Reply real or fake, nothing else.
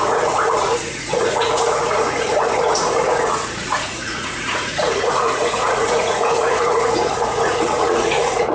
fake